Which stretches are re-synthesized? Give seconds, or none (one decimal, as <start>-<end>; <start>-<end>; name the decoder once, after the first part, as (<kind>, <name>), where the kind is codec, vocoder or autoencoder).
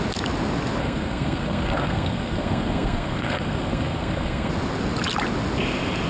0.8-4.5 (codec, SNAC)